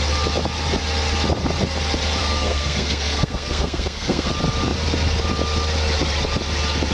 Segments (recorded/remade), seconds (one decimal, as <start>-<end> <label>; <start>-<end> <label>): 0.0-2.2 recorded; 2.2-4.3 remade; 4.3-6.9 recorded

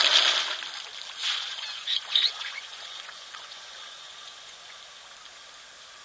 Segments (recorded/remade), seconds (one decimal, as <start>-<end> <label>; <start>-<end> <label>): 0.0-1.2 recorded; 1.2-4.8 remade; 4.8-6.0 recorded

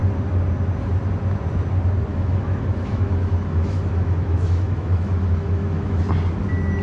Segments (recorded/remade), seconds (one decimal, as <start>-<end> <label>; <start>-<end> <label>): 0.0-2.1 recorded; 2.1-6.0 remade; 6.0-6.8 recorded

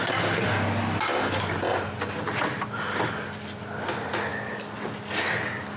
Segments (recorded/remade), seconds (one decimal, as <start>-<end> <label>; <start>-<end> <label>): 0.0-5.8 recorded

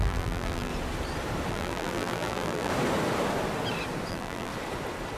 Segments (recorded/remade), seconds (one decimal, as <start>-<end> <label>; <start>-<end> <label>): 0.0-0.7 remade; 0.7-1.5 recorded; 1.5-2.7 remade; 2.7-4.1 recorded; 4.1-4.5 remade; 4.5-5.2 recorded

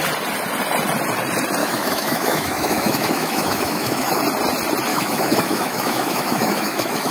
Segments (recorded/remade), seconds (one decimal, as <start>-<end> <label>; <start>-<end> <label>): 0.0-1.6 recorded; 1.6-4.2 remade; 4.2-4.9 recorded; 4.9-7.1 remade

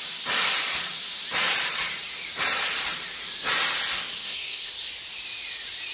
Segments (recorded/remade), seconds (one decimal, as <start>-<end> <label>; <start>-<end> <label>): 0.0-4.2 recorded; 4.2-4.7 remade; 4.7-5.9 recorded

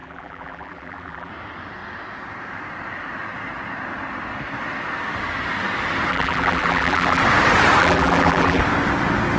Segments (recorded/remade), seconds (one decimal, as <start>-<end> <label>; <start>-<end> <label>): 0.0-1.3 remade; 1.3-6.1 recorded; 6.1-7.2 remade; 7.2-7.8 recorded; 7.8-8.6 remade; 8.6-9.4 recorded